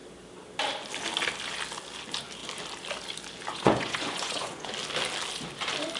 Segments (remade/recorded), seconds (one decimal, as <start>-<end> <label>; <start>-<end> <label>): 0.0-3.5 recorded; 3.5-4.7 remade; 4.7-6.0 recorded